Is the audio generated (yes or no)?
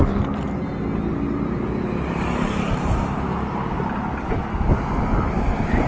no